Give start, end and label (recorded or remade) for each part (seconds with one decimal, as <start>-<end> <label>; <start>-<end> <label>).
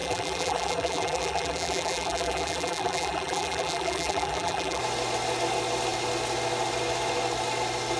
0.0-4.8 remade; 4.8-8.0 recorded